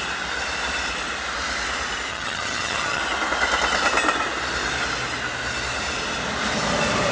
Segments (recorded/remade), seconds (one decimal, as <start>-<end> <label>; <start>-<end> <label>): 0.0-2.1 recorded; 2.1-3.0 remade; 3.0-7.1 recorded